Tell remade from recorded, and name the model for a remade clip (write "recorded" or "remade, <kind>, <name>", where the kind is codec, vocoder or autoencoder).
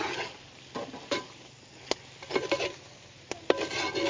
recorded